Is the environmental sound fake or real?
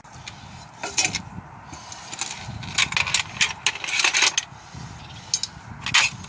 real